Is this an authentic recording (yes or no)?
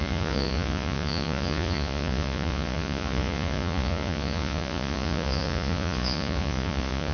no